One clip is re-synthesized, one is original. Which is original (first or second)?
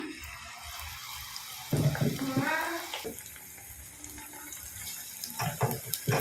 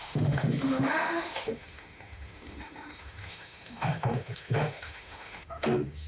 first